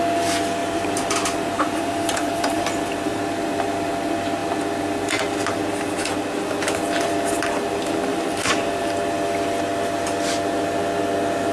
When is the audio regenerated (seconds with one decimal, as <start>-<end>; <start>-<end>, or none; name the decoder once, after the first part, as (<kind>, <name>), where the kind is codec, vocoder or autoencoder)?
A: 0.6-3.2 (vocoder, BigVGAN v2); 8.1-8.8